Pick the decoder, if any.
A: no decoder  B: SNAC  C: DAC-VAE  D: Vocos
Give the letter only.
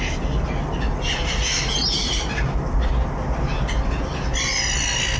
A